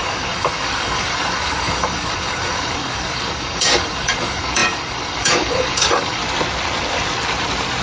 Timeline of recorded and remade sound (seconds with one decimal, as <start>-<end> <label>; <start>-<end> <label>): 0.0-6.2 remade; 6.2-7.8 recorded